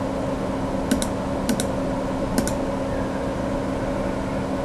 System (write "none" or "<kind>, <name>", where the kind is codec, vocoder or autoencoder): none